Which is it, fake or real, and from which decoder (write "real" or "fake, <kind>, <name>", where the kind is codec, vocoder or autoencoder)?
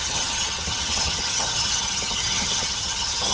fake, vocoder, HiFi-GAN